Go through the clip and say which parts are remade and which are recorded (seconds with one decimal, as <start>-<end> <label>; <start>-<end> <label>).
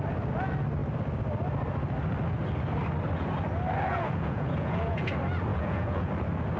0.0-3.9 recorded; 3.9-5.1 remade; 5.1-5.5 recorded; 5.5-6.1 remade; 6.1-6.6 recorded